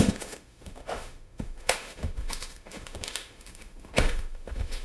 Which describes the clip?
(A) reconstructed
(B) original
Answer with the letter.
A